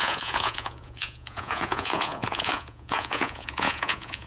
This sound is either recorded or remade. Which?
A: remade